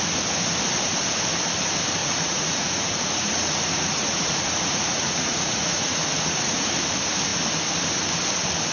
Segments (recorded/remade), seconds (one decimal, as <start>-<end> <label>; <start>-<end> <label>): 0.0-2.0 recorded; 2.0-6.7 remade; 6.7-8.7 recorded